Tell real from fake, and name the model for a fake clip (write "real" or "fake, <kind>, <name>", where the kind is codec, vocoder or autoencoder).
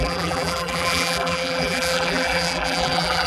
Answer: fake, vocoder, BigVGAN v2